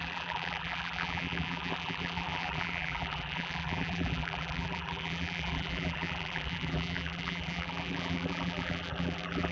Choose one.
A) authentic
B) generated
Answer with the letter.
B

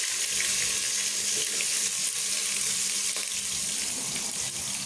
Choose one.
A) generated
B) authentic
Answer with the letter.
B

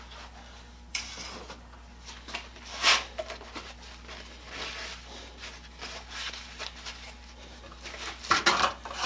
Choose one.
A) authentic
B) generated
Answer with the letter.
A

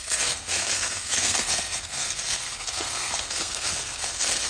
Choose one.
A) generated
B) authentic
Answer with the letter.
A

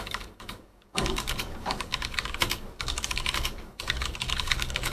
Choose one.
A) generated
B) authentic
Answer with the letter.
A